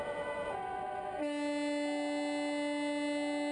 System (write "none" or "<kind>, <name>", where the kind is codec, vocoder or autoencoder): none